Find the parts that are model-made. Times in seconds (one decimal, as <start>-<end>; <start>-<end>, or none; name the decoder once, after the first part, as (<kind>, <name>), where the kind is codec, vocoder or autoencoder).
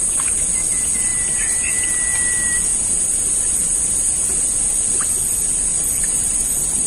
1.1-1.7 (vocoder, BigVGAN v2); 5.7-6.3